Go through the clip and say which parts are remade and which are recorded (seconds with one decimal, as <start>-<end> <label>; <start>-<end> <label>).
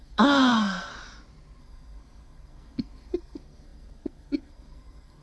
0.0-0.9 remade; 0.9-1.6 recorded; 1.6-5.2 remade